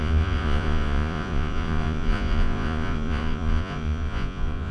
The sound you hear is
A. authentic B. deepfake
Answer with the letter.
B